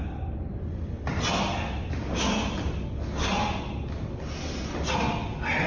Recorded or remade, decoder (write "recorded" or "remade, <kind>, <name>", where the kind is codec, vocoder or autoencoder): recorded